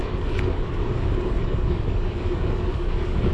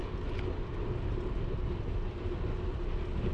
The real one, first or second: second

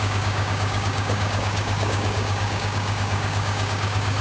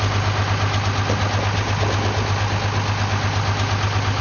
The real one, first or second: second